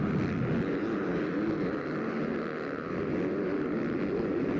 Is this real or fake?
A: real